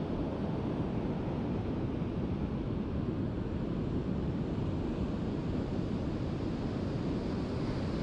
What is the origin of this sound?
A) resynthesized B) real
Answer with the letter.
B